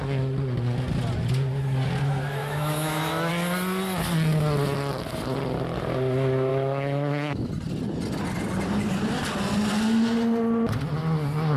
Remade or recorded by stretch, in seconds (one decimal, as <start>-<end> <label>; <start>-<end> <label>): 0.0-2.4 recorded; 2.4-3.3 remade; 3.3-6.5 recorded; 6.5-7.5 remade; 7.5-11.6 recorded